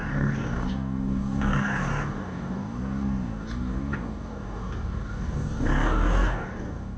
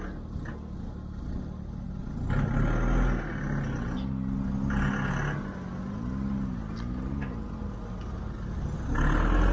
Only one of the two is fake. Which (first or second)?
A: first